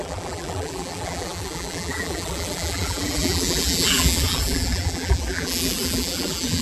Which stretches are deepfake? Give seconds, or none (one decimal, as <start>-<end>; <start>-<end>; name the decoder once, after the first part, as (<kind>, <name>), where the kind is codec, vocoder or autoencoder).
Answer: 0.0-6.6 (vocoder, BigVGAN v2)

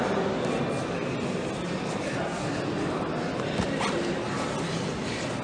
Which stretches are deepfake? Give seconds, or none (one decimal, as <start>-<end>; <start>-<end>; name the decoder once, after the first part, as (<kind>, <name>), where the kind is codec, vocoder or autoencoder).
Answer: none